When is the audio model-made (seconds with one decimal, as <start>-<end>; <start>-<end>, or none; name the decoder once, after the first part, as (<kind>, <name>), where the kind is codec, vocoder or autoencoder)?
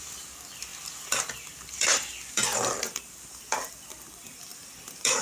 0.0-5.2 (vocoder, BigVGAN v2)